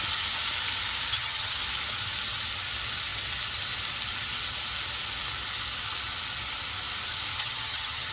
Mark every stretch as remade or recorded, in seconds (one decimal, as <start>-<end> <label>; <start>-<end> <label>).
0.0-1.1 recorded; 1.1-1.6 remade; 1.6-7.3 recorded; 7.3-8.1 remade